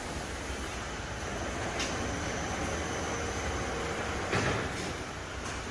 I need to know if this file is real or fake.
real